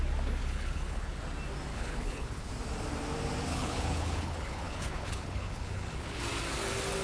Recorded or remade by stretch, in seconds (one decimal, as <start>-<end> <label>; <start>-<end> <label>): 0.0-0.4 recorded; 0.4-1.2 remade; 1.2-1.7 recorded; 1.7-2.5 remade; 2.5-3.5 recorded; 3.5-6.2 remade; 6.2-7.0 recorded